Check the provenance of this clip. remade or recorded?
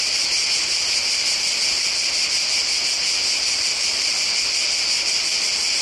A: recorded